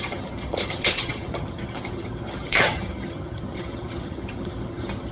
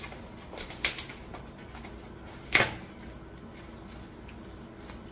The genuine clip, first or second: second